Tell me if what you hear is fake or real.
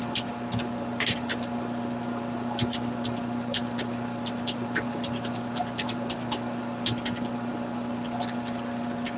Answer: real